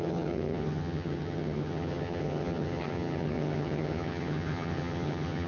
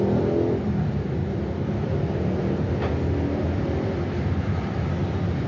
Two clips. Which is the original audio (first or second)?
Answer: second